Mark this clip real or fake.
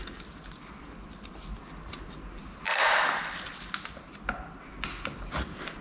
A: real